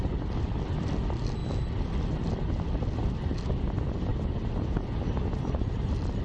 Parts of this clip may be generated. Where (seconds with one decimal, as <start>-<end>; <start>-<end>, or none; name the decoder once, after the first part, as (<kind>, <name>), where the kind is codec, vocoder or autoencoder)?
none